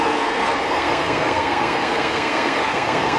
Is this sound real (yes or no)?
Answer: no